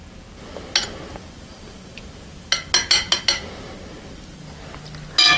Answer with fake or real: real